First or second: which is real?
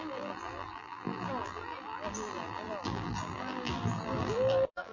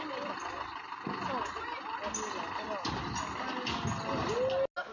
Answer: second